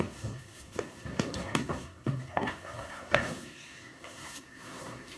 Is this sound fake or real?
fake